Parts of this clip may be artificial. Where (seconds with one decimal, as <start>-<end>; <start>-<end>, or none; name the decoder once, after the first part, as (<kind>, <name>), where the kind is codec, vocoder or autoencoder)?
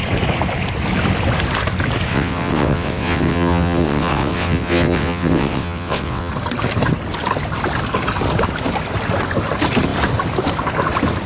2.1-6.3 (vocoder, WaveNeXt)